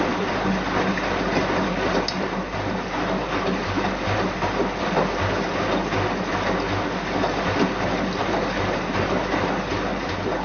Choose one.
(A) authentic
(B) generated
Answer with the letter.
A